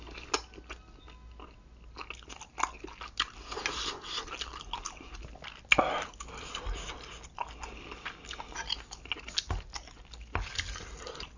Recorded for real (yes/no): yes